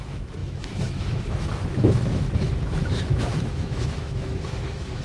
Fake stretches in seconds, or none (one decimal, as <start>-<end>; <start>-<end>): 0.0-5.0